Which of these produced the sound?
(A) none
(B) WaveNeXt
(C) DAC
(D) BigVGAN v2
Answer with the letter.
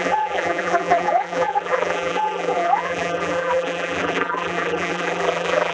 D